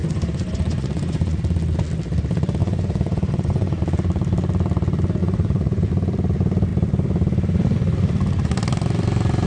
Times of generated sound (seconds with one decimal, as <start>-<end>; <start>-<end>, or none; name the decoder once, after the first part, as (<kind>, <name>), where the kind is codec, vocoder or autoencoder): 0.0-1.4 (vocoder, Vocos); 2.6-3.8; 5.2-5.9